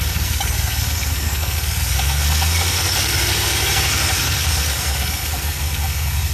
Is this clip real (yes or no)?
no